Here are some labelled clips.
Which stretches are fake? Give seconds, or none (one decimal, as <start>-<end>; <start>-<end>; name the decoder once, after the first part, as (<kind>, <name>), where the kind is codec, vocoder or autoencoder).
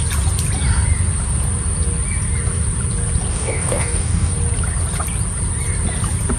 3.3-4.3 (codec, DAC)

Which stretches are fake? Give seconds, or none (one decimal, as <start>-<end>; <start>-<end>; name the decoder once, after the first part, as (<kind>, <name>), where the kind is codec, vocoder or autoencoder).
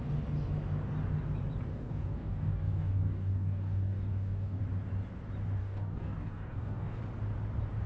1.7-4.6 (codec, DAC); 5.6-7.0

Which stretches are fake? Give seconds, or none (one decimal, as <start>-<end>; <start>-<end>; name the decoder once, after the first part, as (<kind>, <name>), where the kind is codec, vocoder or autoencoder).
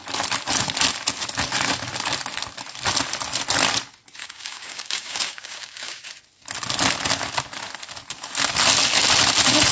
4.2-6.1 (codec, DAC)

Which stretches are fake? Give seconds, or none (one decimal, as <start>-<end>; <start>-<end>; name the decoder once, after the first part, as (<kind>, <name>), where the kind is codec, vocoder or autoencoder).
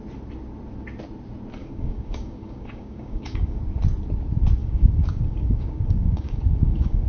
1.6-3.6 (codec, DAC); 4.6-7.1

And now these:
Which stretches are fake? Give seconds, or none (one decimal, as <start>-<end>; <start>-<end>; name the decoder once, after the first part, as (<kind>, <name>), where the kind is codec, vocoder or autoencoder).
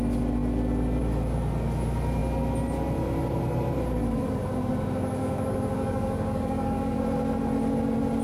5.2-7.0 (codec, DAC)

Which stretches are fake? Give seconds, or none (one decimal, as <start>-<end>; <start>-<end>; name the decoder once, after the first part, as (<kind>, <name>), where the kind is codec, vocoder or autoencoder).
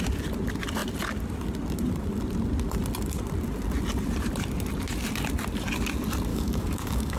6.3-7.2 (codec, DAC)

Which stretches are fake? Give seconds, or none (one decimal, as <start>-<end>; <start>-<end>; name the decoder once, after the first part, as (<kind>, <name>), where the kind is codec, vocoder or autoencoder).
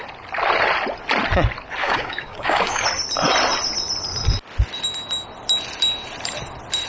1.8-2.8 (codec, DAC)